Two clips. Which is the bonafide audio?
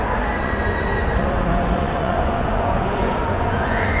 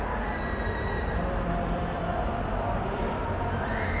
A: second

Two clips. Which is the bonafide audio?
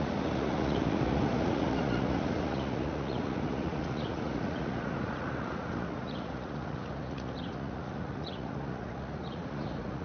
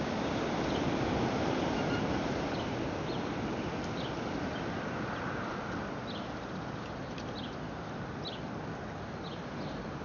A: second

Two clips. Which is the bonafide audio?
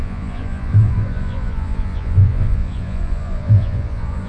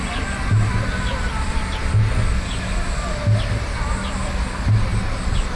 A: second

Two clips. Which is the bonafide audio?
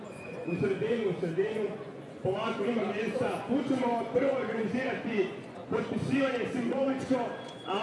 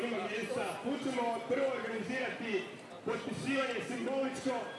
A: second